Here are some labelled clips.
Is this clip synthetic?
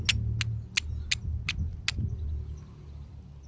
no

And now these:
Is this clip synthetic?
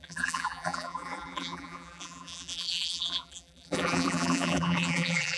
yes